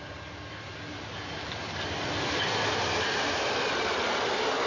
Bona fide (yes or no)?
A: yes